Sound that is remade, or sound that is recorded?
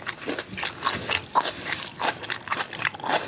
recorded